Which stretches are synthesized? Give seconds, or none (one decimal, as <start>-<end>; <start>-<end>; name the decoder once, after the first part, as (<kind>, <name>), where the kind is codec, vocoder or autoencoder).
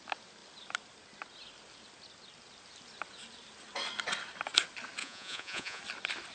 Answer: 5.0-5.8 (vocoder, Vocos)